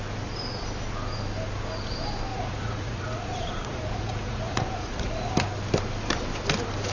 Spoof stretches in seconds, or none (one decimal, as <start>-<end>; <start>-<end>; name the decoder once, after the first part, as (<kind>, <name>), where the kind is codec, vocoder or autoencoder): 2.3-5.3 (vocoder, Vocos)